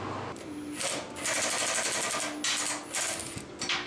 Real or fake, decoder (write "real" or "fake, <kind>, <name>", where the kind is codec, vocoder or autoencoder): real